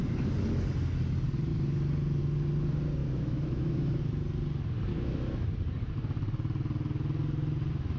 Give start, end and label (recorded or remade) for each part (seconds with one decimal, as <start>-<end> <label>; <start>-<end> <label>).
0.0-3.0 recorded; 3.0-4.0 remade; 4.0-4.9 recorded; 4.9-5.5 remade; 5.5-8.0 recorded